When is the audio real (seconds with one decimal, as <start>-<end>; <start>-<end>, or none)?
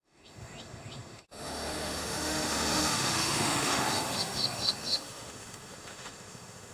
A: none